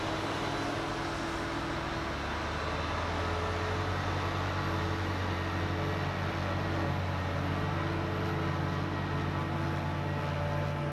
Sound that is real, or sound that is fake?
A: real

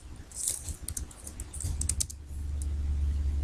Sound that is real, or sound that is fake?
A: real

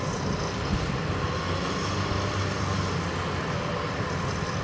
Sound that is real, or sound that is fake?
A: real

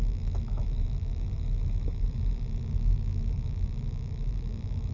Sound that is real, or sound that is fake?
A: fake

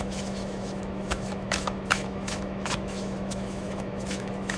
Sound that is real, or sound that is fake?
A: fake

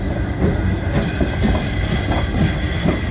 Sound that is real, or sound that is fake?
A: real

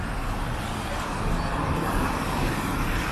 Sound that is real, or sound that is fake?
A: real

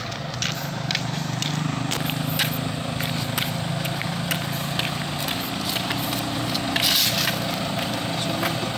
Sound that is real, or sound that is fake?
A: real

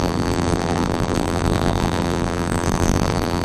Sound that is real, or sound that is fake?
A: fake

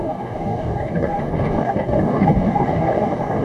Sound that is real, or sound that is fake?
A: fake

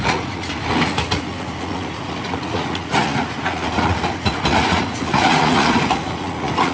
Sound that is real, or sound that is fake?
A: fake